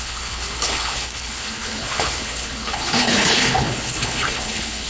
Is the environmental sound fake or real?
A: fake